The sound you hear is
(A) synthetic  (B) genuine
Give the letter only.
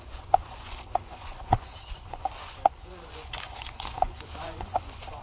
A